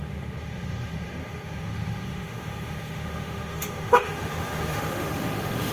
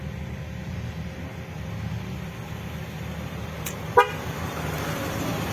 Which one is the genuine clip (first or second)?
second